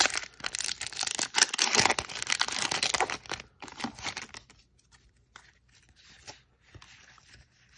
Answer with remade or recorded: recorded